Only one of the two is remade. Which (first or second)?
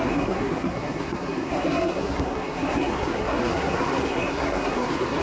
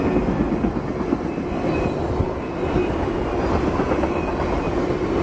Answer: first